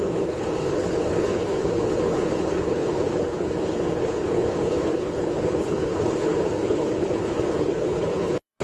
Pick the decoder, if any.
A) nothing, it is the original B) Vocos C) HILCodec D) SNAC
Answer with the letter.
C